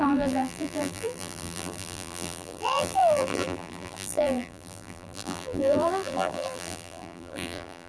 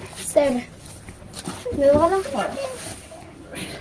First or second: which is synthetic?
first